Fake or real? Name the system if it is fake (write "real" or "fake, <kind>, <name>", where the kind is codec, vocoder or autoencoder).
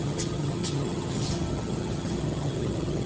fake, vocoder, HiFi-GAN